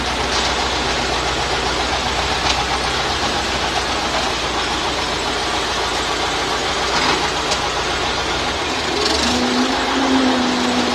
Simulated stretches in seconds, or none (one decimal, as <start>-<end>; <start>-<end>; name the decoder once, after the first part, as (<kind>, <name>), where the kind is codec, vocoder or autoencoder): none